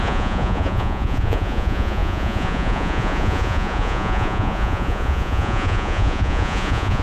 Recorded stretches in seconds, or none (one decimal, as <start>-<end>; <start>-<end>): none